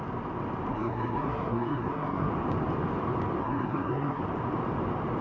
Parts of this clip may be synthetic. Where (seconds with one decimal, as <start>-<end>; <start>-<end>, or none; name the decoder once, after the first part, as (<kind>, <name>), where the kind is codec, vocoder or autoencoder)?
0.7-2.3 (codec, SNAC); 3.4-4.2